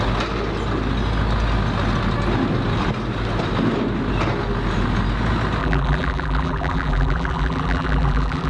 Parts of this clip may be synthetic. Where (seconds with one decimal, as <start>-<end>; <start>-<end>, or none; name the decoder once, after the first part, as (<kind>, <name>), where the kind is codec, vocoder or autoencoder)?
5.6-8.5 (vocoder, BigVGAN v2)